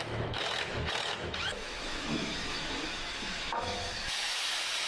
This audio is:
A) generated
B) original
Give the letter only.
A